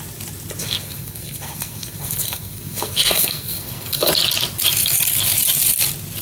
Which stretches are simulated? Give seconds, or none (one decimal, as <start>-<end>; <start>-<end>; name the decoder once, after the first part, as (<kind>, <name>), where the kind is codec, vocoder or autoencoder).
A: 0.6-4.1 (codec, SNAC)